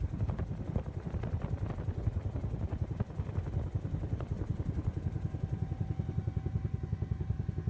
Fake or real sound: real